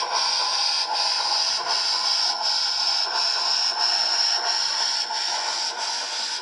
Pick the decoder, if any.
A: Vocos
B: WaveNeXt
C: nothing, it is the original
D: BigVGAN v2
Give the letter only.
A